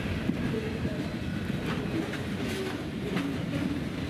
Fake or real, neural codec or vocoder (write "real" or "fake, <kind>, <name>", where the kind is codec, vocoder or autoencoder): real